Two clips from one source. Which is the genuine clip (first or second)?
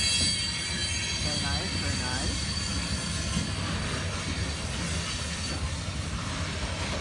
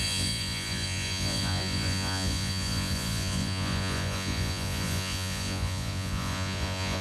first